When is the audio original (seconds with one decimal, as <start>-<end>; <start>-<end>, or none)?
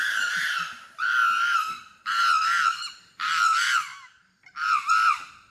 0.0-5.5